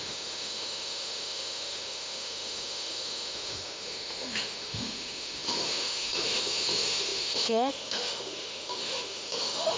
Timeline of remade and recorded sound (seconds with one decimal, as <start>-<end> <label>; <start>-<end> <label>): 0.0-9.8 remade